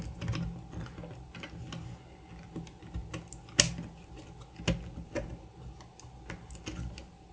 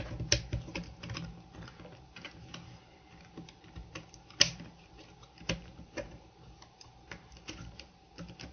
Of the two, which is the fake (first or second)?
second